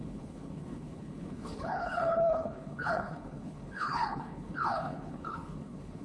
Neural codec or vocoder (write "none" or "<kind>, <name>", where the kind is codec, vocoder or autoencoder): codec, HILCodec